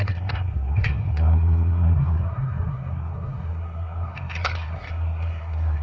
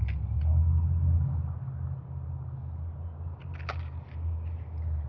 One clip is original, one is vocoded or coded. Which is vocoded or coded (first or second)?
first